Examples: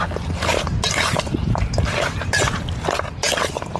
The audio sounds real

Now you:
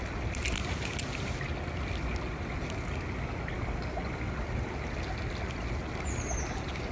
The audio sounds real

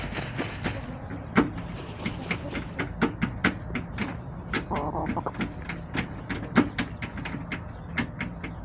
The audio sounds real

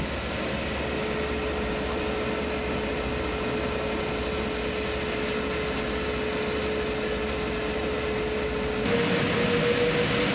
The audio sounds real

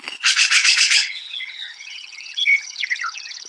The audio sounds fake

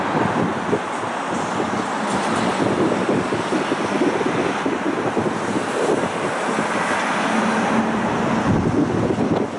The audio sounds real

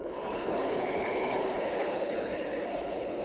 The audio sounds fake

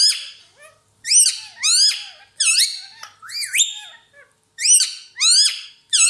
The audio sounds real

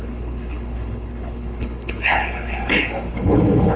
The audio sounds fake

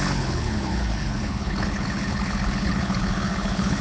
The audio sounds fake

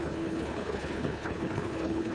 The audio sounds fake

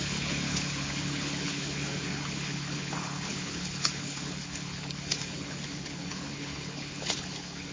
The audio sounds fake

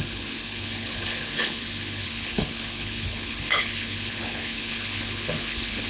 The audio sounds fake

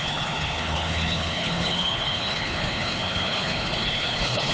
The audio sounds fake